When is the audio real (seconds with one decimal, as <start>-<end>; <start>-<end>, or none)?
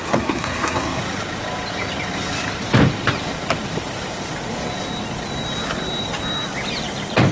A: 1.0-7.3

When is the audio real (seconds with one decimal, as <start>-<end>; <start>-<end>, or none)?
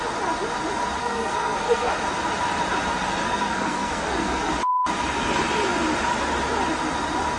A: 0.0-1.0; 1.9-3.2; 4.5-7.4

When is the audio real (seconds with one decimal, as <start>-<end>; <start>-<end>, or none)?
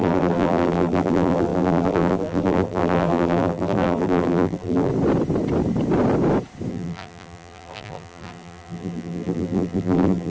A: 4.9-6.7